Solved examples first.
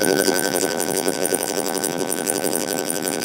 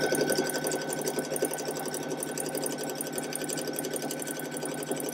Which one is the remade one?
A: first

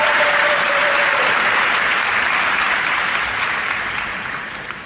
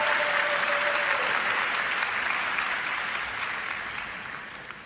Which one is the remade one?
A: first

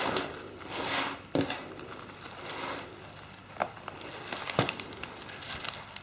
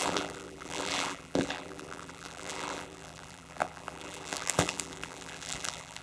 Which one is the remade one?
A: second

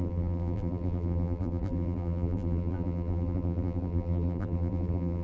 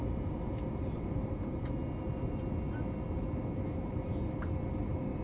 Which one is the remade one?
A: first